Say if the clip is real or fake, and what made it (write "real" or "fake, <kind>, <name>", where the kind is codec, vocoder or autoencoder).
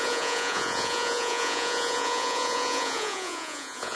fake, vocoder, Vocos